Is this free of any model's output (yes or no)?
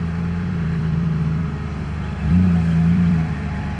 no